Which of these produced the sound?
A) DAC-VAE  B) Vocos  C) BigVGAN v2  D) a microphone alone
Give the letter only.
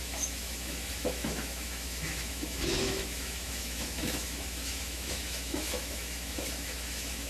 A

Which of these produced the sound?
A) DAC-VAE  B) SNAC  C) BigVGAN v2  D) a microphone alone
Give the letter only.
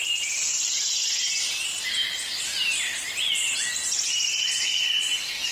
D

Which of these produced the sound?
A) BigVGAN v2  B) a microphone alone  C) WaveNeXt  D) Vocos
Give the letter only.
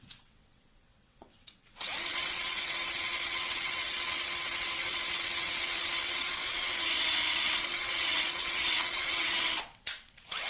C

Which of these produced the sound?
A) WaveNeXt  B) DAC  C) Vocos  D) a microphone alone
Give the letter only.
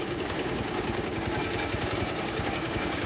B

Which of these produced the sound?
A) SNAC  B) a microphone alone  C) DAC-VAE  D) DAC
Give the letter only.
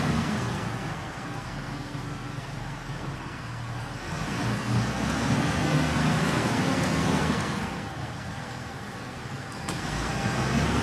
A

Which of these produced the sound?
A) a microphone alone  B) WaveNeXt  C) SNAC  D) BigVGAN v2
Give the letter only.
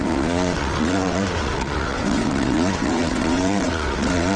B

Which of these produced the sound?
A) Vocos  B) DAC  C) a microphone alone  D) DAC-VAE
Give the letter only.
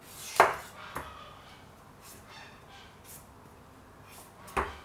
C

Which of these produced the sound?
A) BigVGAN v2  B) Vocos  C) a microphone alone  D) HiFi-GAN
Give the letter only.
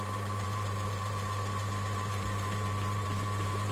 A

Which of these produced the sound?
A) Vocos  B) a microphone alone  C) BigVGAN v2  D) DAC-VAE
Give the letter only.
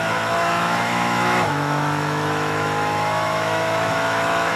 D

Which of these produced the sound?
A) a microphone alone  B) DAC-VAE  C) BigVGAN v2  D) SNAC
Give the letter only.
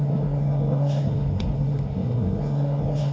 D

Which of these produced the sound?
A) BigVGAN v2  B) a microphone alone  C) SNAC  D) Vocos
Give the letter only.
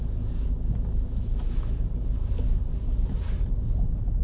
B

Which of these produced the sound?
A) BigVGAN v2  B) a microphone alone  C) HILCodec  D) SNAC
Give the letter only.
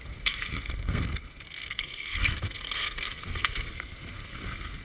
D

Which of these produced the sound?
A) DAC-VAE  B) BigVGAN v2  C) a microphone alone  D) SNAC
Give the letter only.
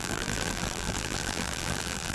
B